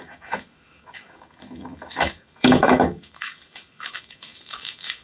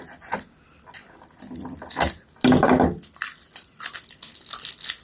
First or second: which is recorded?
second